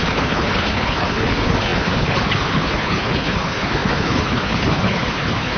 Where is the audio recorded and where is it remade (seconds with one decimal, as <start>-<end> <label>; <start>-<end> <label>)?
0.0-5.6 remade